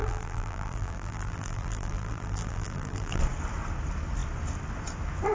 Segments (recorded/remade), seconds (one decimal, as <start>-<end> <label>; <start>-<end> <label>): 0.0-3.2 remade; 3.2-5.3 recorded